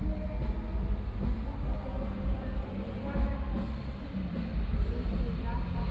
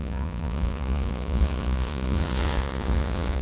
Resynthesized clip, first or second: second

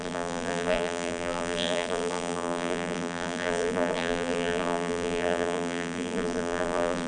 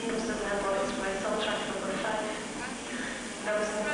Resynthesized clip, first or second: first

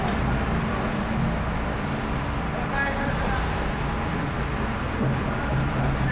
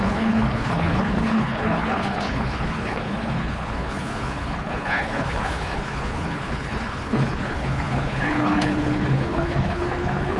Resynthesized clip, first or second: second